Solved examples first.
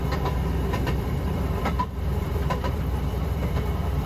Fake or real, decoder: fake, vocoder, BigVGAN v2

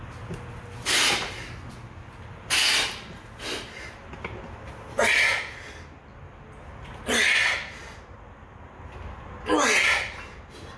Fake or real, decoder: real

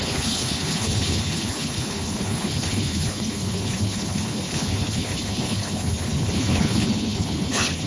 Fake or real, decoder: fake, codec, HILCodec